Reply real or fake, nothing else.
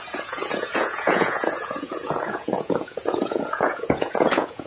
fake